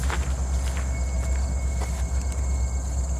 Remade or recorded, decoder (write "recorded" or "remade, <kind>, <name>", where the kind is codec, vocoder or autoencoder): recorded